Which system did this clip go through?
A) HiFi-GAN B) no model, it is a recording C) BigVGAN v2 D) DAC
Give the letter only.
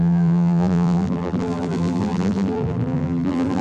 C